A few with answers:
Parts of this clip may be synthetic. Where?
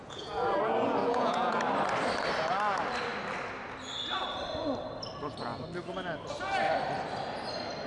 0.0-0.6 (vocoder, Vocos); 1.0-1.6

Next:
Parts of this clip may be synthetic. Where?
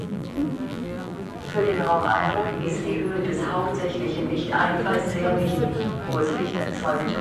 0.0-2.7 (vocoder, BigVGAN v2); 5.8-7.2